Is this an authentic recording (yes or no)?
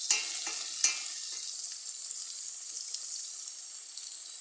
yes